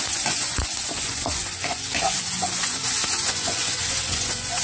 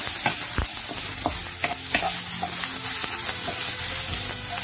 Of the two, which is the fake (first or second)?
first